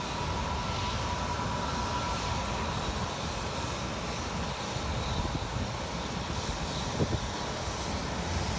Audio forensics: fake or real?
real